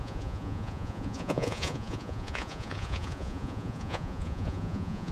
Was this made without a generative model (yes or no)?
no